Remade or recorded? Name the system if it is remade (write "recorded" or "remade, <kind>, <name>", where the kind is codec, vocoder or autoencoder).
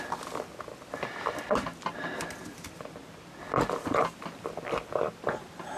recorded